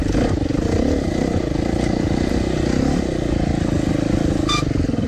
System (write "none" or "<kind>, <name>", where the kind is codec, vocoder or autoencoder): none